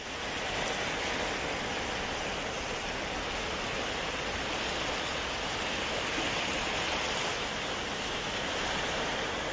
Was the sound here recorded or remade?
recorded